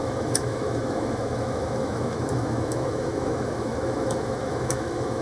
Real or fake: fake